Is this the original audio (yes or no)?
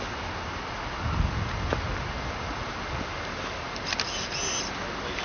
yes